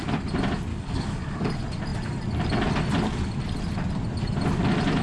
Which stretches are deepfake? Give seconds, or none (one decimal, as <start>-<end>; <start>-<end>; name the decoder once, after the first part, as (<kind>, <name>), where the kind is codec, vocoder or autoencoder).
0.7-1.5 (codec, DAC)